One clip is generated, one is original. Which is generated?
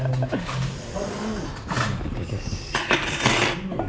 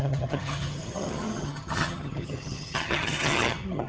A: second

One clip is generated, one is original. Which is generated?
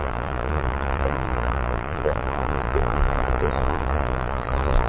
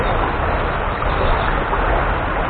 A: first